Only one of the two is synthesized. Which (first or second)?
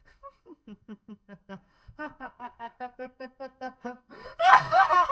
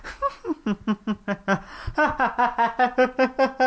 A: first